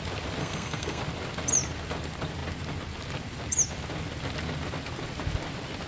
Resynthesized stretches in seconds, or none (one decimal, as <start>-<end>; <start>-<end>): 0.4-1.0